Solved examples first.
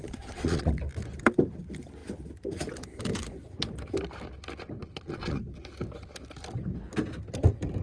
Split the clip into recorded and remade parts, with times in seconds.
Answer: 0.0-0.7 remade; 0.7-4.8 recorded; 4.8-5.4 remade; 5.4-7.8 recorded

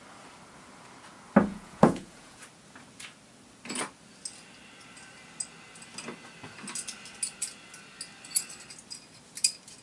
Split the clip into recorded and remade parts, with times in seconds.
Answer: 0.0-1.5 recorded; 1.5-2.5 remade; 2.5-9.8 recorded

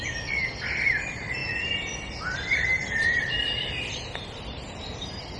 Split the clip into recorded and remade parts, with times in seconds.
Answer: 0.0-5.4 recorded

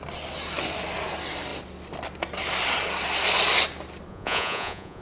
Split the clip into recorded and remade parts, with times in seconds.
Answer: 0.0-4.1 recorded; 4.1-5.0 remade

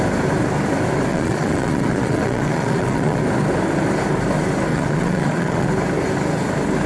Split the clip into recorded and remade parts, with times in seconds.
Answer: 0.0-1.1 recorded; 1.1-3.2 remade; 3.2-4.7 recorded; 4.7-5.7 remade; 5.7-6.9 recorded

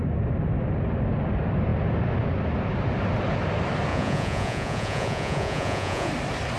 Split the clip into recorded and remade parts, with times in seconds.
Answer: 0.0-3.9 recorded; 3.9-6.1 remade; 6.1-6.6 recorded

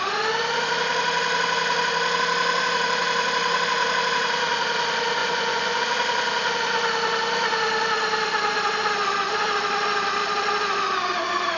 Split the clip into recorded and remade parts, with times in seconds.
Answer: 0.0-5.2 recorded; 5.2-5.8 remade; 5.8-11.6 recorded

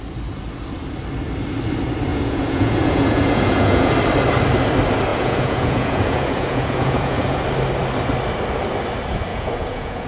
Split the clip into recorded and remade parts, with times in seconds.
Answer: 0.0-2.1 recorded; 2.1-3.9 remade; 3.9-5.1 recorded; 5.1-7.4 remade; 7.4-9.3 recorded; 9.3-10.1 remade